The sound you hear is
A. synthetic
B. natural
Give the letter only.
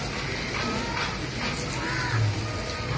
B